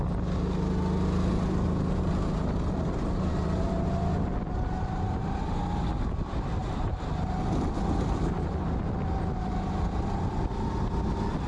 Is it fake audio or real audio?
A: real